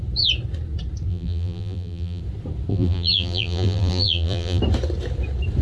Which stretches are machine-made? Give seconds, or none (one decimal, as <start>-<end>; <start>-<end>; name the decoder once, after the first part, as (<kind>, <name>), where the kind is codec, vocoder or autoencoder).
1.1-2.2 (vocoder, BigVGAN v2); 2.7-4.6